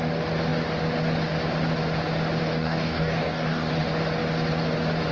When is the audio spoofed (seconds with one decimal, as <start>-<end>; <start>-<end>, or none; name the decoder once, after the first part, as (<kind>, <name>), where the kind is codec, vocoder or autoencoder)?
2.4-3.7 (codec, DAC)

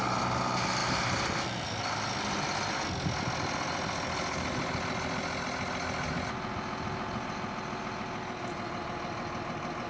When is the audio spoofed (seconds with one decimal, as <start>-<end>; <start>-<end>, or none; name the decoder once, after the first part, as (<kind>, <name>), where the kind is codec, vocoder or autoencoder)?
none

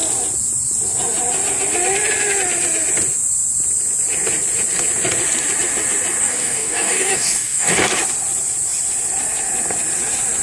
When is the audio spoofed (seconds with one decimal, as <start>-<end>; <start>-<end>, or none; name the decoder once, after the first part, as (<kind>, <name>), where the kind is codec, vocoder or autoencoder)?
6.2-7.7 (codec, DAC)

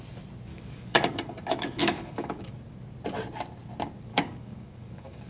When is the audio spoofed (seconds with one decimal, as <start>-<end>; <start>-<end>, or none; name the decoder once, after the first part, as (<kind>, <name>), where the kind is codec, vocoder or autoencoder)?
0.5-2.6 (codec, DAC); 4.1-5.3

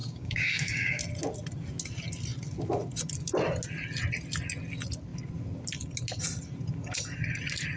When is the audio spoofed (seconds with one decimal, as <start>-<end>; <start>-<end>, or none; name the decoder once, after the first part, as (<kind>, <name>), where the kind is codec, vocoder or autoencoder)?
0.0-1.0 (codec, DAC)

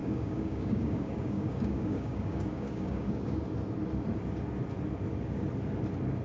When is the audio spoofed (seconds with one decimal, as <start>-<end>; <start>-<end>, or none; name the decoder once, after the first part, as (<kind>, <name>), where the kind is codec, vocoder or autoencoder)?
0.0-3.4 (codec, DAC)